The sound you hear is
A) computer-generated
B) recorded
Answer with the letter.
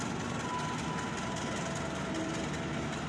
B